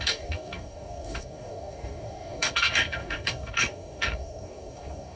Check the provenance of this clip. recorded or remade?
remade